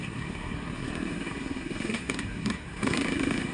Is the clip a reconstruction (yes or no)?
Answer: yes